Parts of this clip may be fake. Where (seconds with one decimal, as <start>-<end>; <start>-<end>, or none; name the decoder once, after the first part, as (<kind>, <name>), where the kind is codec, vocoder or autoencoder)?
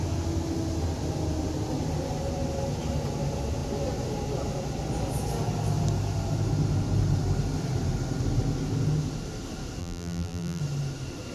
9.8-10.6 (vocoder, BigVGAN v2)